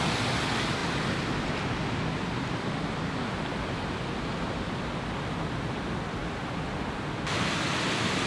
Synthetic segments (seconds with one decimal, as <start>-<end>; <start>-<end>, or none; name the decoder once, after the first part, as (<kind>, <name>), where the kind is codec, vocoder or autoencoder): none